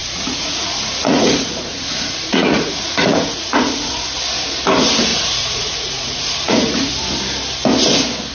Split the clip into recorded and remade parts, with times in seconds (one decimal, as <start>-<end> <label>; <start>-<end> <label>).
0.0-3.9 remade; 3.9-5.1 recorded; 5.1-6.9 remade; 6.9-8.3 recorded